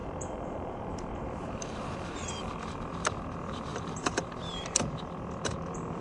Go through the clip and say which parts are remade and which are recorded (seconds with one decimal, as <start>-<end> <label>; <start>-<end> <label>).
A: 0.0-2.5 remade; 2.5-3.7 recorded; 3.7-4.2 remade; 4.2-6.0 recorded